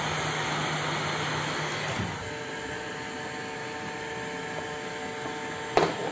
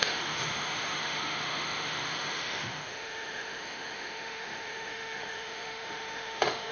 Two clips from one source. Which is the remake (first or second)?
second